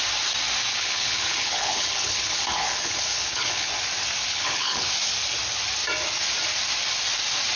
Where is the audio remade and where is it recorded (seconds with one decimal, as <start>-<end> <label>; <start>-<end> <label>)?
0.0-0.7 recorded; 0.7-3.7 remade; 3.7-4.3 recorded; 4.3-4.9 remade; 4.9-7.6 recorded